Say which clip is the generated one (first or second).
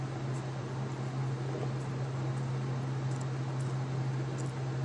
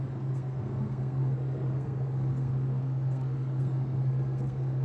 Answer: second